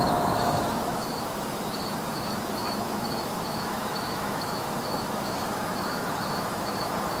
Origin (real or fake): fake